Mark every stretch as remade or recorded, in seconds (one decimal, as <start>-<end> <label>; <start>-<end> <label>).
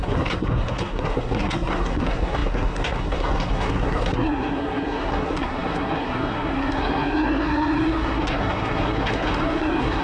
0.0-10.0 remade